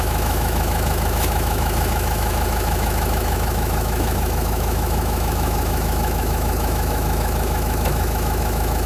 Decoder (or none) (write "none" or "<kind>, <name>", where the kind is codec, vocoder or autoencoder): autoencoder, DAC-VAE